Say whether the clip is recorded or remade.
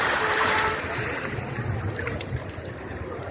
remade